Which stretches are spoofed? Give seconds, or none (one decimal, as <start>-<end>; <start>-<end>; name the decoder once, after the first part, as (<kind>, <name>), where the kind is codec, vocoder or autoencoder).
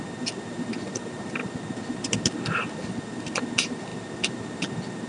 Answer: none